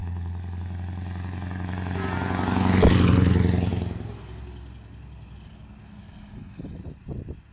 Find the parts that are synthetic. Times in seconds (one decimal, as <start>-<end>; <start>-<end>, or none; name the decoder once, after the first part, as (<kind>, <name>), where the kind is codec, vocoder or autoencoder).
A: none